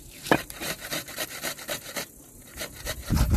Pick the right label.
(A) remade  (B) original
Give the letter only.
A